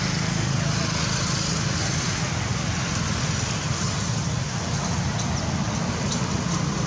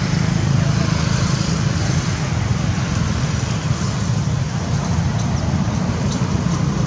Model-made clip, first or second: second